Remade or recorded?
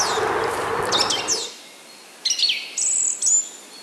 recorded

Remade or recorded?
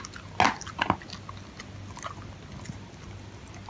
recorded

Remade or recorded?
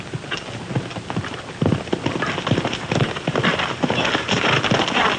recorded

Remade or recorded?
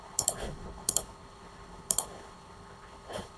remade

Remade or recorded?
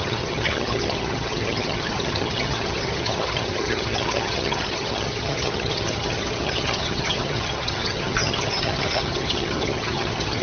remade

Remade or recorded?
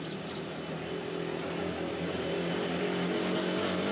recorded